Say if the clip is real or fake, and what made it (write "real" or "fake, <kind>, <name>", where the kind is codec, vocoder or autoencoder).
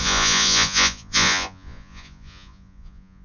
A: fake, vocoder, Vocos